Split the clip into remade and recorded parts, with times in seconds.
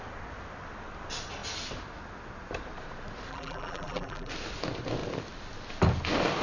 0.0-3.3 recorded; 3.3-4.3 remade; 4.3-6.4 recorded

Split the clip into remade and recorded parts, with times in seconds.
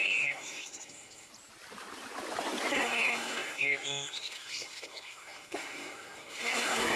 0.0-1.3 remade; 1.3-2.7 recorded; 2.7-7.0 remade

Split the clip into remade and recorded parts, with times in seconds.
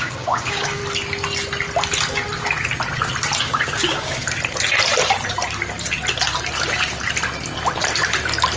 0.0-0.8 remade; 0.8-3.4 recorded; 3.4-4.2 remade; 4.2-8.6 recorded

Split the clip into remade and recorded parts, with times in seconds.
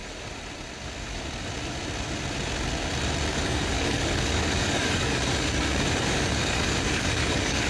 0.0-3.3 recorded; 3.3-7.7 remade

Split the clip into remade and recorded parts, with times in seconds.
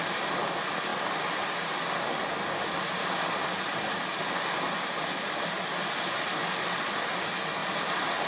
0.0-8.3 recorded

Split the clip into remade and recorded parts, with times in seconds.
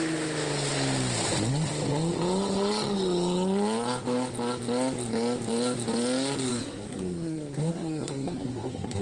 0.0-6.5 recorded; 6.5-9.0 remade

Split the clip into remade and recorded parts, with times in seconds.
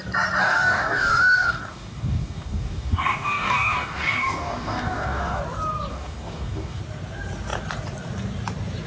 0.0-0.4 recorded; 0.4-5.4 remade; 5.4-5.9 recorded; 5.9-6.8 remade; 6.8-8.9 recorded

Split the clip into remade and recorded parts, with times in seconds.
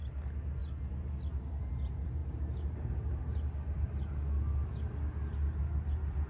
0.0-6.3 recorded